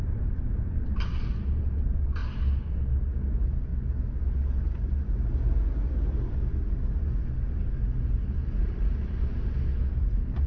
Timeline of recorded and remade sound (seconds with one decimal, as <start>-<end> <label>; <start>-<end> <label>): 0.0-10.5 recorded